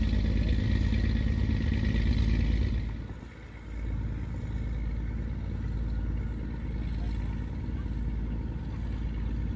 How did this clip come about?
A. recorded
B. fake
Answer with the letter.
A